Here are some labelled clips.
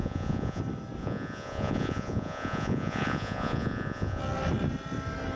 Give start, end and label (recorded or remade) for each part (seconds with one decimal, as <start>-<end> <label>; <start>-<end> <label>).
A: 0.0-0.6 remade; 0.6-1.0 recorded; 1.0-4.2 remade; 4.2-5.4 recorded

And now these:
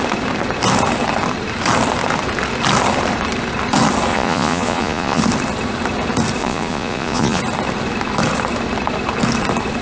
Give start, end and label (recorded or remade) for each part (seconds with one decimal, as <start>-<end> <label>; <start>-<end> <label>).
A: 0.0-4.1 recorded; 4.1-5.2 remade; 5.2-6.4 recorded; 6.4-7.4 remade; 7.4-9.8 recorded

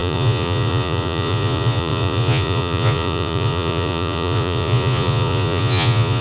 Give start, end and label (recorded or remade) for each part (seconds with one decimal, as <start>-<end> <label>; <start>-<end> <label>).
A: 0.0-6.2 remade

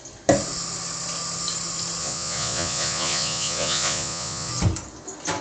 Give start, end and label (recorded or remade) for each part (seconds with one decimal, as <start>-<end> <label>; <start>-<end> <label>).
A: 0.0-2.0 recorded; 2.0-4.5 remade; 4.5-5.4 recorded

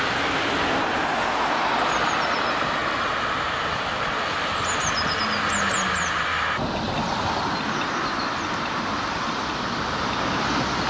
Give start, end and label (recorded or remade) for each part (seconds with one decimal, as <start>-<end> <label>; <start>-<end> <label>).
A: 0.0-10.9 recorded